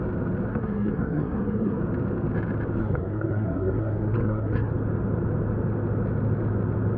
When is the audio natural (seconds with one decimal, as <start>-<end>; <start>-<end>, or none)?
0.0-0.5; 1.8-2.8; 4.7-7.0